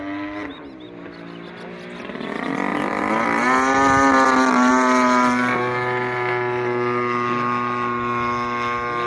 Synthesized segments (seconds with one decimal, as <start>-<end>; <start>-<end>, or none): none